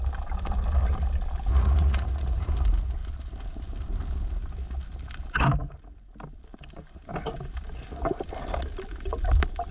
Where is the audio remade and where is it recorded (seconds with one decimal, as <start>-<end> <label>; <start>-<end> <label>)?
0.0-1.5 recorded; 1.5-2.5 remade; 2.5-9.7 recorded